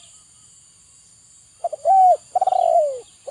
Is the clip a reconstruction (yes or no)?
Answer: no